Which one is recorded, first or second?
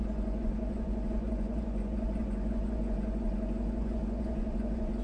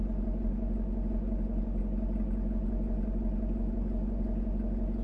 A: second